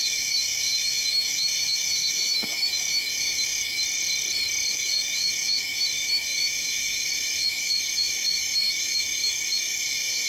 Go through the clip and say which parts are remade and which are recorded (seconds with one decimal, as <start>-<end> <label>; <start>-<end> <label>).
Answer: 0.0-3.8 remade; 3.8-4.7 recorded; 4.7-10.3 remade